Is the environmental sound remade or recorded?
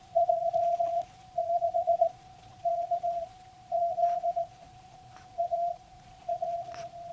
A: remade